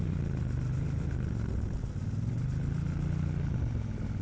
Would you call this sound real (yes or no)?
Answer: yes